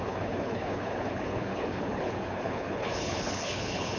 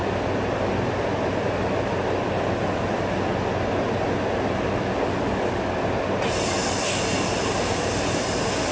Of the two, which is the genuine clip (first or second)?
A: second